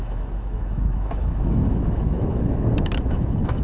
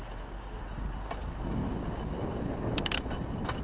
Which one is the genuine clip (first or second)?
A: second